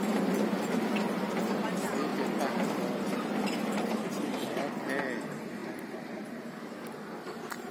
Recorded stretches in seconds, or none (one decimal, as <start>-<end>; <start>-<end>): 0.0-7.7